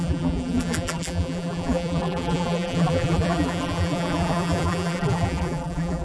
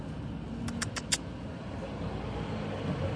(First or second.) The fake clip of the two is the first